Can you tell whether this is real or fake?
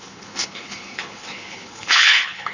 fake